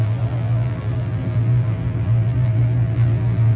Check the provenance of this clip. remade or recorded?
remade